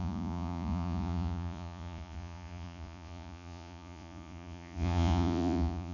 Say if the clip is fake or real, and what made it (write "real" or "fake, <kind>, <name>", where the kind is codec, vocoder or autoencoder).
fake, vocoder, Vocos